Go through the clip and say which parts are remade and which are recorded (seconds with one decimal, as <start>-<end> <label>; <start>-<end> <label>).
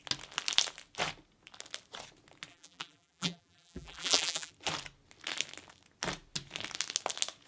0.0-2.5 recorded; 2.5-4.5 remade; 4.5-7.5 recorded